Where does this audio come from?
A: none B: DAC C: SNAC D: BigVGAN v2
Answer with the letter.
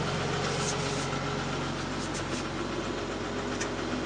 A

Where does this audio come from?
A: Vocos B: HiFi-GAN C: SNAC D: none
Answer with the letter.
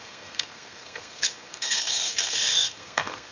C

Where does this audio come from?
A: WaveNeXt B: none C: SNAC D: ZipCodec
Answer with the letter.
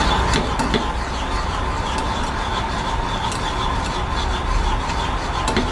B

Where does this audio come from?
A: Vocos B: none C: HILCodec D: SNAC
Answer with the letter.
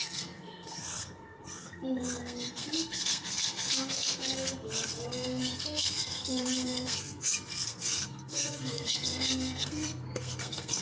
D